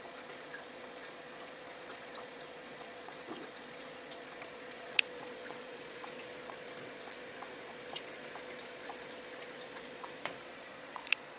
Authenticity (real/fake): fake